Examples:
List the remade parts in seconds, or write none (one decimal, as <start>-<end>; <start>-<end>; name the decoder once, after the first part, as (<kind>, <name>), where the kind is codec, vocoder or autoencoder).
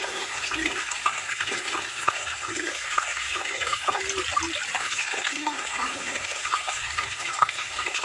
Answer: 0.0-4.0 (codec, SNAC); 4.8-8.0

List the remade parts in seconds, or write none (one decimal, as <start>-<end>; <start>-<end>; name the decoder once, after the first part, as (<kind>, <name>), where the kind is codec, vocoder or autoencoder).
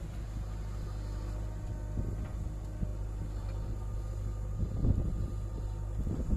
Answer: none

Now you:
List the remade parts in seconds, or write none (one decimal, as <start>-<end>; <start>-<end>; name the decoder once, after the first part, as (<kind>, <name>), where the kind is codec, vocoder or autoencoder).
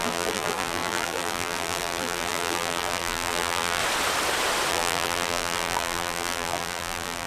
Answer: 0.0-3.8 (vocoder, BigVGAN v2); 4.7-7.3